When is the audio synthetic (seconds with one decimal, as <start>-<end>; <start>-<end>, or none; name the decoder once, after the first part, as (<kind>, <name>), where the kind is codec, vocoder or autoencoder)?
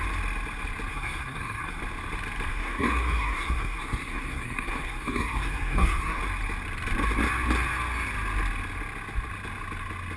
0.9-1.8 (codec, SNAC); 2.5-6.2